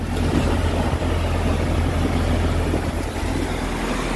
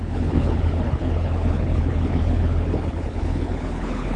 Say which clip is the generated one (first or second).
second